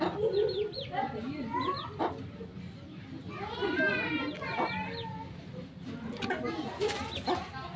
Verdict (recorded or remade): recorded